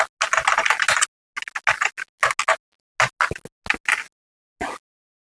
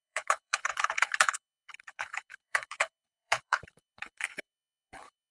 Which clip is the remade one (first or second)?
second